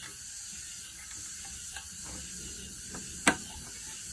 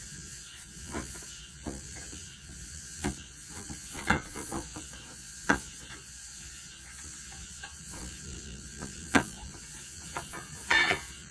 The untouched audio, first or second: first